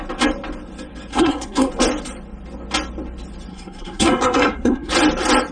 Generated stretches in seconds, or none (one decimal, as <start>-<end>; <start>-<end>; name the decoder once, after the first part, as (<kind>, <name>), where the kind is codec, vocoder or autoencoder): 1.1-1.7 (codec, SNAC); 3.5-4.9